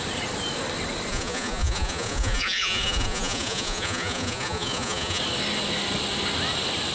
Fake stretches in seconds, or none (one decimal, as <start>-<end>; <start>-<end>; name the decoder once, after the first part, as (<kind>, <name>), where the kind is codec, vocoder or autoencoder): 1.1-5.2 (vocoder, Vocos)